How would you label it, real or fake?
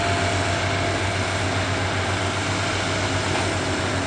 real